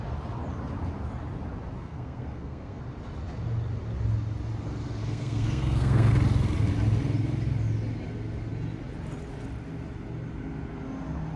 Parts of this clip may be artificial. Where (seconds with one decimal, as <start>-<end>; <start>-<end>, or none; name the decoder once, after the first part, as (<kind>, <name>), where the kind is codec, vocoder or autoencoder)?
1.8-2.8 (codec, SNAC); 5.0-6.1